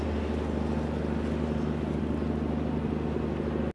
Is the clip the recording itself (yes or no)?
yes